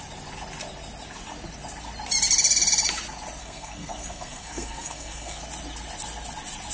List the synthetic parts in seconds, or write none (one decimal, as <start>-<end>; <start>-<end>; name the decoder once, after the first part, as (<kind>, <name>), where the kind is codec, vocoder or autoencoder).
3.4-5.4 (codec, SNAC)